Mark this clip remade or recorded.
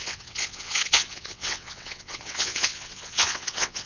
remade